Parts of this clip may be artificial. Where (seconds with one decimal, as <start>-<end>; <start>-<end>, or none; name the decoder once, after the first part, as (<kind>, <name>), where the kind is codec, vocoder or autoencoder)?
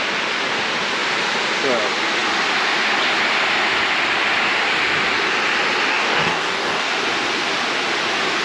5.9-6.9 (codec, DAC)